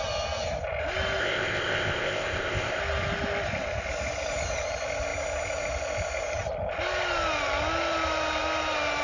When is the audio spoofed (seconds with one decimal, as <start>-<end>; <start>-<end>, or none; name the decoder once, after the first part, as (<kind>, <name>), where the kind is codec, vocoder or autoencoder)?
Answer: 1.2-2.8 (codec, ZipCodec)